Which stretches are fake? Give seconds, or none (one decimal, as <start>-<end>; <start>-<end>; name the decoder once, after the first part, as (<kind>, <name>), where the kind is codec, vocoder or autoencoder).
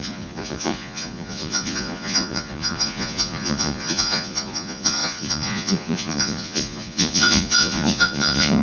0.0-8.6 (vocoder, Vocos)